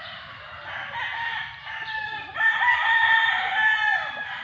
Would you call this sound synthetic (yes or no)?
no